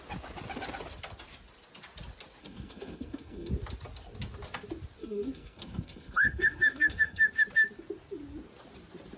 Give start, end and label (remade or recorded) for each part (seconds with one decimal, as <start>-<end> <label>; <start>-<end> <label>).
0.0-2.4 recorded; 2.4-3.5 remade; 3.5-5.0 recorded; 5.0-7.3 remade; 7.3-9.2 recorded